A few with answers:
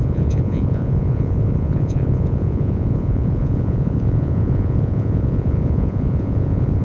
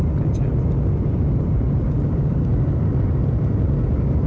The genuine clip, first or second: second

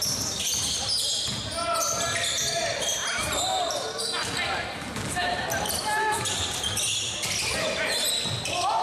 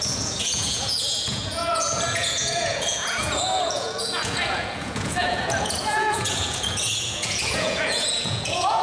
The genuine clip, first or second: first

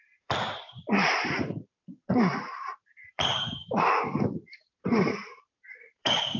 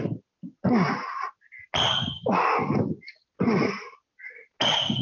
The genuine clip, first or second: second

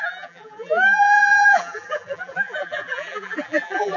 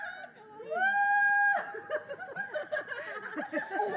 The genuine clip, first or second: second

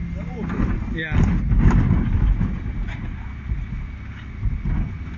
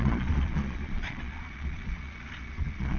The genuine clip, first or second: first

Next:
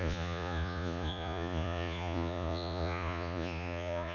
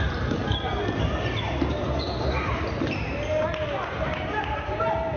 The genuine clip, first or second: second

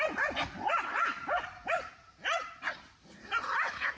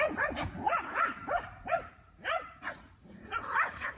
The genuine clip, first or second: first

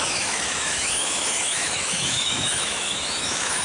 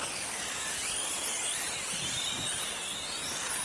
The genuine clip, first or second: second